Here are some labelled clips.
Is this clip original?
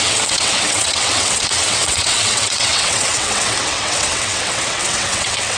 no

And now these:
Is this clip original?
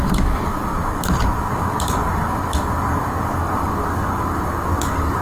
no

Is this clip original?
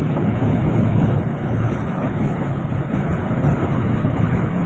no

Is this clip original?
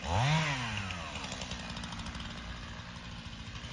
yes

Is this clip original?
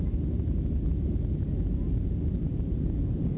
yes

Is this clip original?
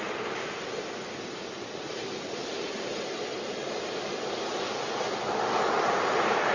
yes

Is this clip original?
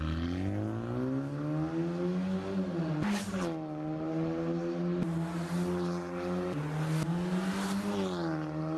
yes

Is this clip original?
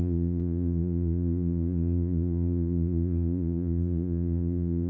no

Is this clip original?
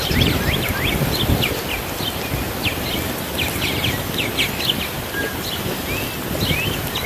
yes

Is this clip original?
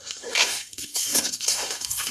no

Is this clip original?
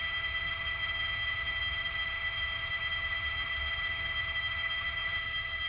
no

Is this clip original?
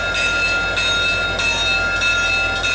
yes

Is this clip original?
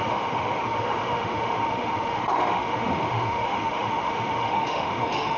no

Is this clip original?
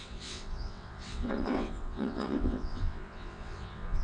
no